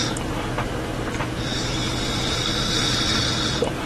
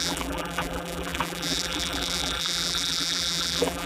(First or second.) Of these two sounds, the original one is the first